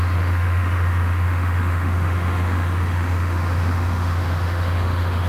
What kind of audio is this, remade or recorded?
remade